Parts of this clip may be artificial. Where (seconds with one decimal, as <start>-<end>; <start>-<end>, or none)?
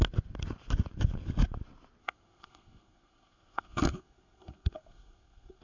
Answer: 2.0-5.6